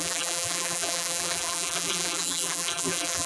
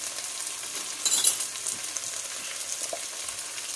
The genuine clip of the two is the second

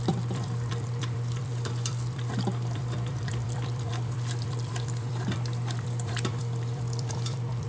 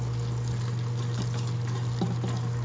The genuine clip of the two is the second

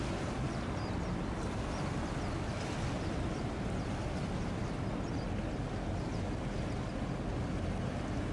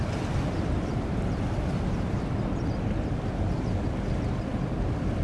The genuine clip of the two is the first